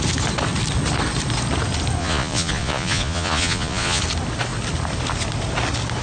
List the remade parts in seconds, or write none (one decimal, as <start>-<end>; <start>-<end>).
2.0-4.0